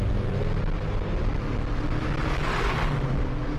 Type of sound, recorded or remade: recorded